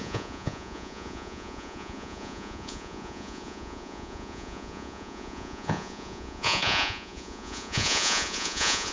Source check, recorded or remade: remade